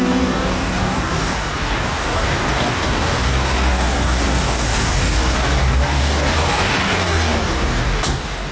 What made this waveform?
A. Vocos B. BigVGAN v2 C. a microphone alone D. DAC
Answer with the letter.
D